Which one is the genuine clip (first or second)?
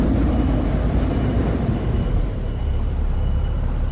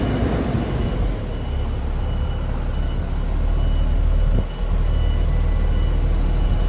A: second